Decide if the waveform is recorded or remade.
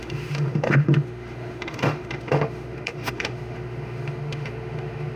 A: remade